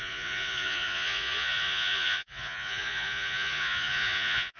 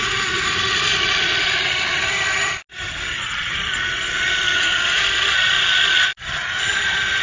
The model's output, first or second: first